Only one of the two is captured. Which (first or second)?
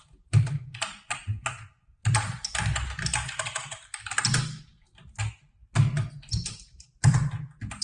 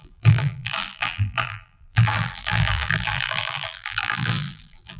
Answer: first